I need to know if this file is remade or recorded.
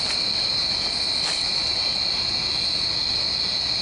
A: recorded